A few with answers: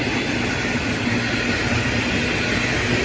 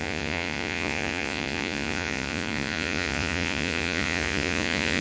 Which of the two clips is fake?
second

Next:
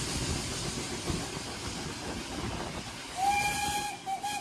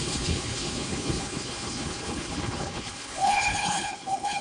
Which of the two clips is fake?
second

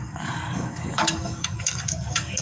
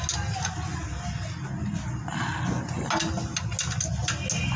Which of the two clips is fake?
first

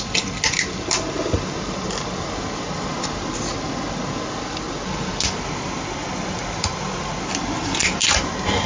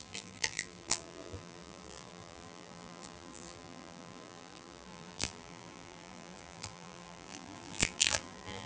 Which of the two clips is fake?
second